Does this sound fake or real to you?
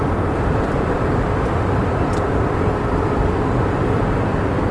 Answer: fake